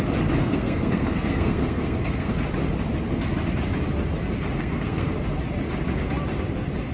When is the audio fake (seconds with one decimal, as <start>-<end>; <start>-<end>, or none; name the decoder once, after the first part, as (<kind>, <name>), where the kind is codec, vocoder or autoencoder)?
0.4-2.3 (codec, SNAC); 4.6-5.1